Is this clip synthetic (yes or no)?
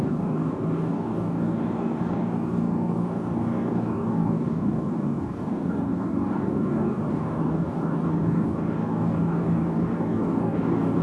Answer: yes